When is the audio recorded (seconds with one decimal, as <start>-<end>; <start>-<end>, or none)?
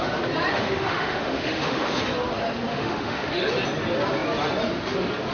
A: 0.0-0.5; 2.0-2.7; 3.5-5.3